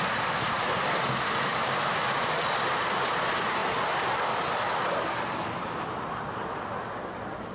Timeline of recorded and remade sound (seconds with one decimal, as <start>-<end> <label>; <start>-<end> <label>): 0.0-7.5 recorded